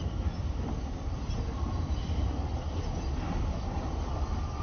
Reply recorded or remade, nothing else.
recorded